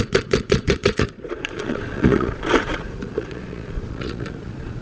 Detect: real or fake fake